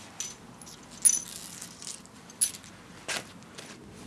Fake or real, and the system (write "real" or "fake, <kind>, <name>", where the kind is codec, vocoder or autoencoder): real